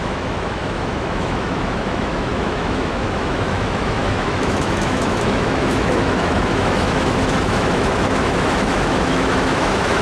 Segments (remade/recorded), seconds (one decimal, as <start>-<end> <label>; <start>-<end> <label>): 0.0-10.0 remade